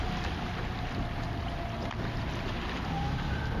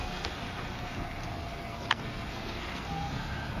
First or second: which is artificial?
second